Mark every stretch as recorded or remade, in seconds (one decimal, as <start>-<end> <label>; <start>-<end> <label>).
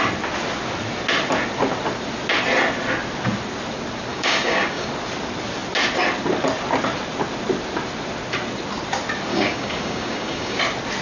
0.0-4.1 recorded; 4.1-4.9 remade; 4.9-9.3 recorded; 9.3-10.6 remade; 10.6-11.0 recorded